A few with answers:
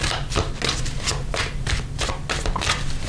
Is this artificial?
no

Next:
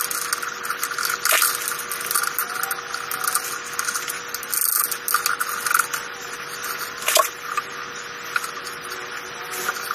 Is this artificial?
no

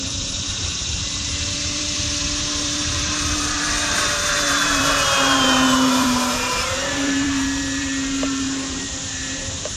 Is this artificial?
yes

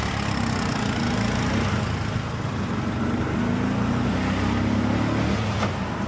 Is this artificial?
no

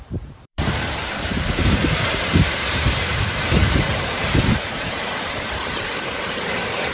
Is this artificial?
yes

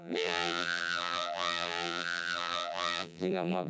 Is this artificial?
yes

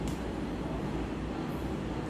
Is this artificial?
yes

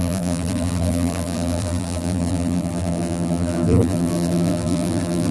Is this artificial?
yes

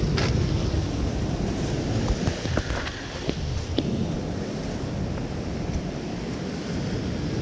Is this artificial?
no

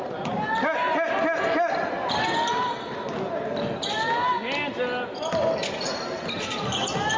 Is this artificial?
no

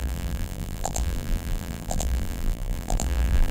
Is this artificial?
yes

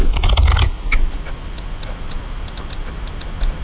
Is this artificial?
no